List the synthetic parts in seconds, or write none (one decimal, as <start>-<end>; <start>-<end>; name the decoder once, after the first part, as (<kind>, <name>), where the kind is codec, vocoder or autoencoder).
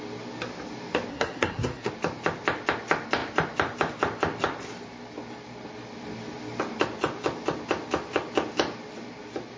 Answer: 1.1-1.9 (codec, SNAC)